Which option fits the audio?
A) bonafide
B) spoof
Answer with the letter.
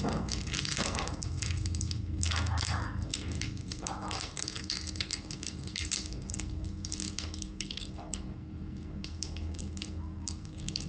B